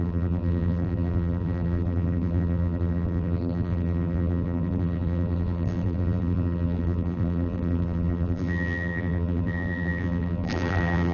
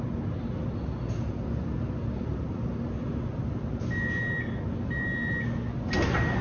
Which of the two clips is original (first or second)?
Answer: second